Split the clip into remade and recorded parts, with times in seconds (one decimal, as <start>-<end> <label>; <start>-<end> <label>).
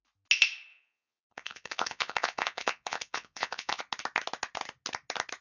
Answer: 0.0-0.7 recorded; 0.7-3.8 remade; 3.8-5.4 recorded